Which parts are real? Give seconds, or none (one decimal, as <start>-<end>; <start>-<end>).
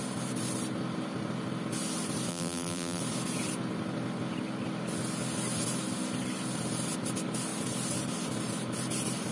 0.0-2.3; 3.0-9.3